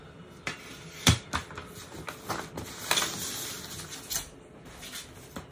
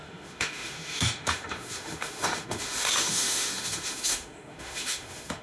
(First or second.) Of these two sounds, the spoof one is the second